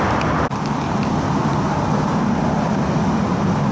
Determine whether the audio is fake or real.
real